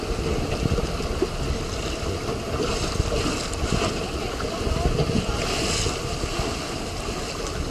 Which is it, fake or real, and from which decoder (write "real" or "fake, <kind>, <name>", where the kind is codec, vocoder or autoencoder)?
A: real